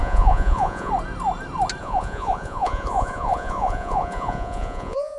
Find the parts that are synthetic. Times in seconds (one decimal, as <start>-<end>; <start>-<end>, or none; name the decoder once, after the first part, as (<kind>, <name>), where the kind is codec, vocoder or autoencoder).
0.0-0.9 (vocoder, Vocos); 1.8-5.2